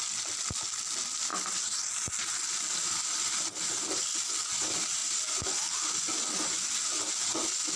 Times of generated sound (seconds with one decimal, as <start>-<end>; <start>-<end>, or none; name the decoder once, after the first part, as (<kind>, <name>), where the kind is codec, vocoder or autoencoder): none